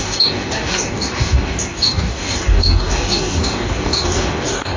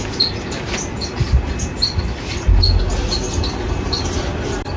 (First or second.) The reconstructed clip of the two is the first